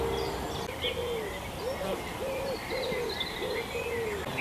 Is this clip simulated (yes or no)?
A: no